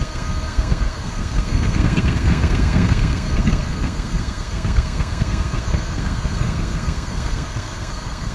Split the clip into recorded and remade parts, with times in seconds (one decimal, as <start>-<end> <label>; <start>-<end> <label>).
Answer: 0.0-8.3 remade